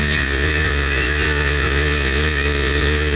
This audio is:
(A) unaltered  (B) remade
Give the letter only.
B